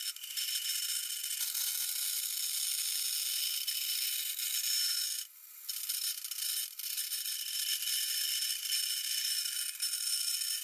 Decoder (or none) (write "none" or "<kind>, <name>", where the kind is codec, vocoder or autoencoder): none